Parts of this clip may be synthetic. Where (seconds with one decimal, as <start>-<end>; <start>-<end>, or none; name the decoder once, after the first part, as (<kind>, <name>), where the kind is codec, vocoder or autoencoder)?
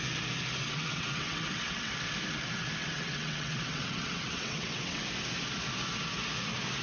0.6-1.9 (vocoder, WaveNeXt); 2.8-5.0